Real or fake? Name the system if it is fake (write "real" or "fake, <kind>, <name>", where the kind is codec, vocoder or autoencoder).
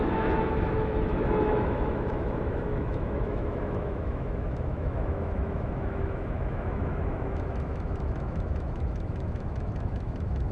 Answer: fake, autoencoder, DAC-VAE